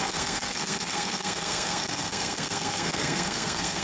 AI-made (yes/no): yes